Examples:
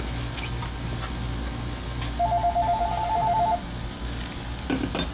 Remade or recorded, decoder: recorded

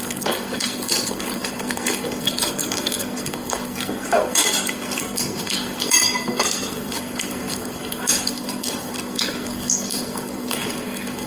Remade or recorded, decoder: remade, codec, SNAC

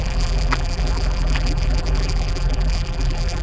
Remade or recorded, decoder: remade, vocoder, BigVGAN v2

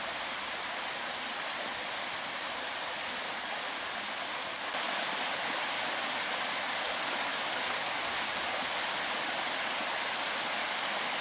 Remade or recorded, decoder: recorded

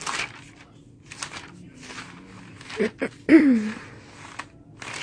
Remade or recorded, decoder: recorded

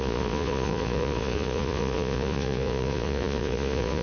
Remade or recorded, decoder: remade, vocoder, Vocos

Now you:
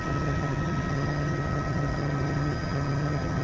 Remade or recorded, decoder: remade, vocoder, HiFi-GAN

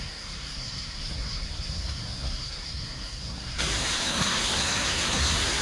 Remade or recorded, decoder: remade, codec, SNAC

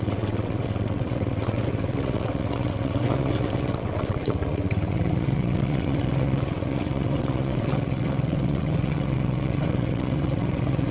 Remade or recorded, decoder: remade, vocoder, WaveNeXt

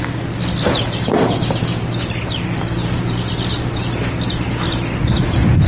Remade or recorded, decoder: recorded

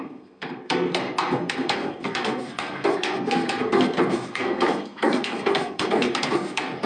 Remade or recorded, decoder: remade, codec, SNAC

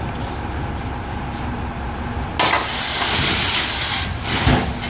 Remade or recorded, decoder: recorded